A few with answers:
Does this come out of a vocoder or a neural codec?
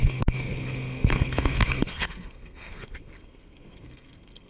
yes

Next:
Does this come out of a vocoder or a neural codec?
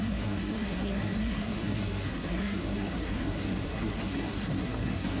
yes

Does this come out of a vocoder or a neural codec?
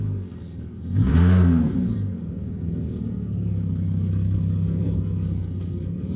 yes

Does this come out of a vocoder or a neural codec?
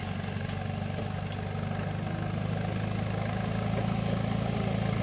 no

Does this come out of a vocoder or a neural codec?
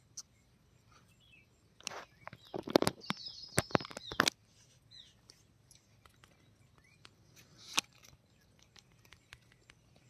no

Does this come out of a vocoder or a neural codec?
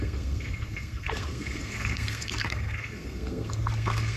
yes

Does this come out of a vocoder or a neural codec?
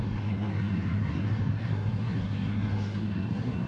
yes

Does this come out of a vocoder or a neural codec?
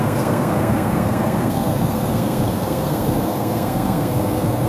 yes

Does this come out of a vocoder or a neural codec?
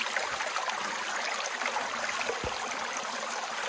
no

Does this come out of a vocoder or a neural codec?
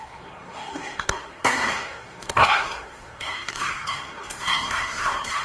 yes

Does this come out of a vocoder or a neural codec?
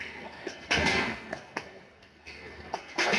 yes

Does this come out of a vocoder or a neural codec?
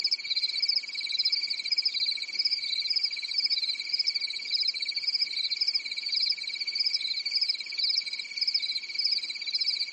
no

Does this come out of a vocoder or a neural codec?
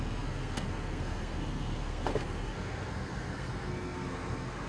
yes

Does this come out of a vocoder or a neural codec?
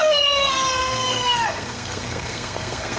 yes